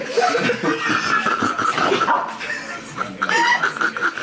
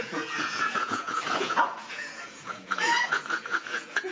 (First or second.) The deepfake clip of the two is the second